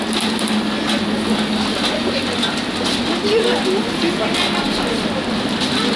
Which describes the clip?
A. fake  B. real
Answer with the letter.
B